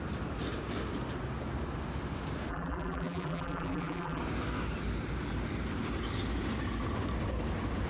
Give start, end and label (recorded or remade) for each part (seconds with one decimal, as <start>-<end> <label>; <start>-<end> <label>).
0.0-2.5 recorded; 2.5-4.2 remade; 4.2-7.9 recorded